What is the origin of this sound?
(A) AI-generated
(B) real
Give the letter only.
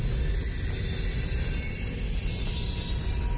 B